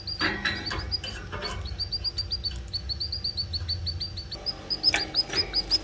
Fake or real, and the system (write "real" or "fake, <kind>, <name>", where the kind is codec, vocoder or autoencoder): real